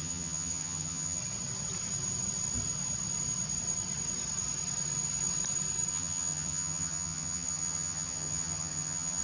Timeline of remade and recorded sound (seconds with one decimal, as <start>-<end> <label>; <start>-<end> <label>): 0.0-1.2 remade; 1.2-5.9 recorded; 5.9-9.2 remade

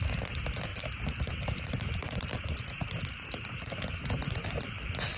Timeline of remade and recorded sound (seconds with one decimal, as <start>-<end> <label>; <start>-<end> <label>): 0.0-0.7 recorded; 0.7-3.8 remade; 3.8-5.2 recorded